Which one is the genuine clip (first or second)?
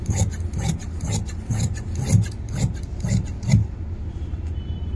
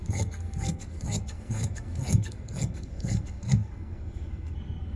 first